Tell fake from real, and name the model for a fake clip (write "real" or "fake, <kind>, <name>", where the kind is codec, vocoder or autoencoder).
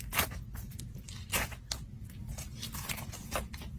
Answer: real